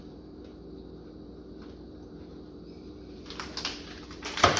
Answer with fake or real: fake